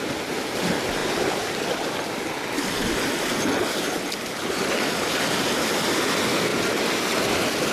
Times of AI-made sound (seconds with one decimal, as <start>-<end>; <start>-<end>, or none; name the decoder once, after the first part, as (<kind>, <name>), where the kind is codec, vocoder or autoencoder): none